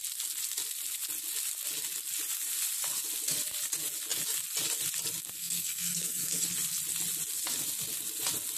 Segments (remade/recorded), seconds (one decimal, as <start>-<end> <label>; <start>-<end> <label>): 0.0-5.4 recorded; 5.4-6.4 remade; 6.4-8.6 recorded